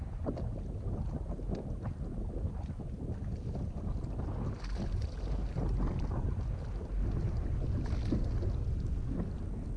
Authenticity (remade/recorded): recorded